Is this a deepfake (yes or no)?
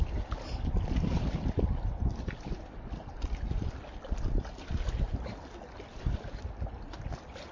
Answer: no